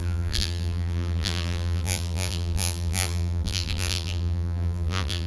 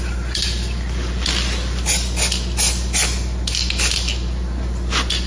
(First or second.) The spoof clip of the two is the first